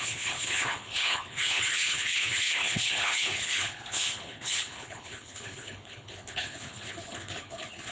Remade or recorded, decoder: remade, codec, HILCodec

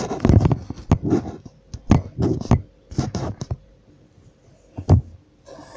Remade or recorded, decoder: recorded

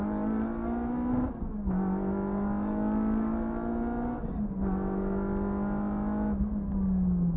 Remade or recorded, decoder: recorded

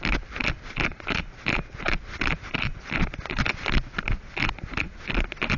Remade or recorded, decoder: recorded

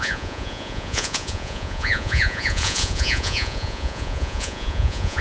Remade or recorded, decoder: remade, vocoder, Vocos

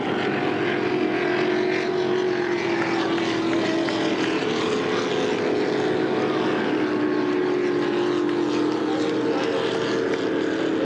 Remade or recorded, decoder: recorded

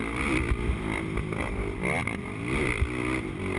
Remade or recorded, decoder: recorded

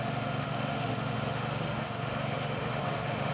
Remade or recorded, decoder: remade, autoencoder, DAC-VAE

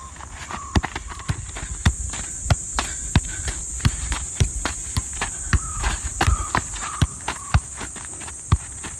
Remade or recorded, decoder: recorded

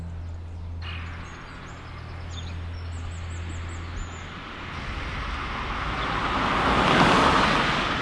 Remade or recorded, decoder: recorded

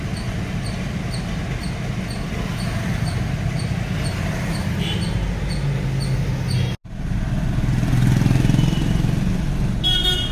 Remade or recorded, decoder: recorded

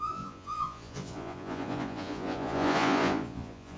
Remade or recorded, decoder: remade, vocoder, Vocos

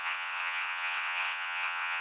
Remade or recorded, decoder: remade, vocoder, WaveNeXt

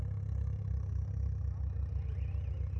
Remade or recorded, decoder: recorded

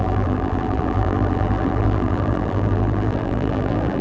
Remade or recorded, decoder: remade, vocoder, BigVGAN v2